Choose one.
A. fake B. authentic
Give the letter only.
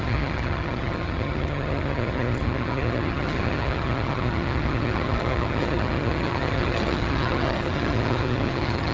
A